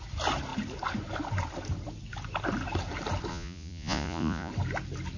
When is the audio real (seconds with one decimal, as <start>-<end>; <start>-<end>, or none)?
0.0-3.3; 4.5-5.2